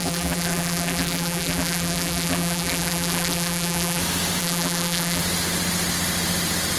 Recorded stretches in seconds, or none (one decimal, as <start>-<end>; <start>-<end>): 4.0-4.4; 5.2-6.8